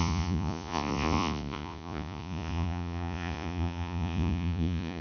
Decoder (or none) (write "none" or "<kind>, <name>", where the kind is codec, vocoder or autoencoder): vocoder, Vocos